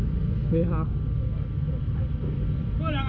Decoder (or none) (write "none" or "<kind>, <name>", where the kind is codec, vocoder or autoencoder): none